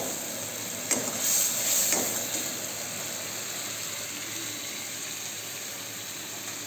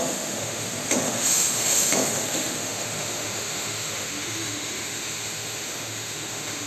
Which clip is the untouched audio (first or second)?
first